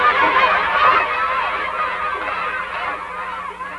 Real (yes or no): yes